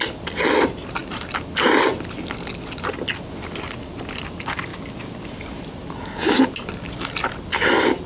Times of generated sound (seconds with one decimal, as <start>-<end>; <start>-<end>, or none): 4.7-8.1